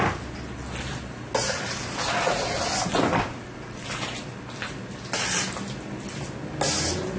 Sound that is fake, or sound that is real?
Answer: real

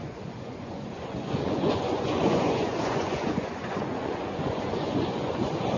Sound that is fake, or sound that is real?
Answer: fake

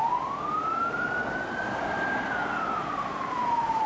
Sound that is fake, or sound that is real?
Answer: real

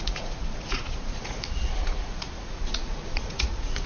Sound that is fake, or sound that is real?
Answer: fake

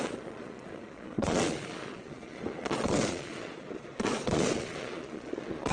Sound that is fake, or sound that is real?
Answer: fake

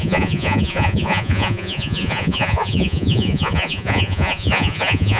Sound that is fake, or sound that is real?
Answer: fake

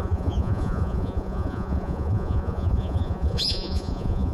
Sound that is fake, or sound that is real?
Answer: fake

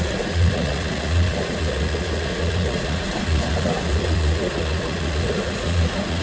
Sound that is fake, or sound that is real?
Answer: fake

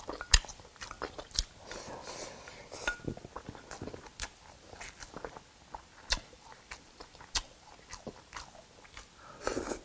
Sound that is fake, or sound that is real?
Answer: real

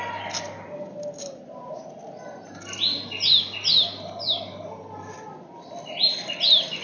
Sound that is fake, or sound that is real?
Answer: real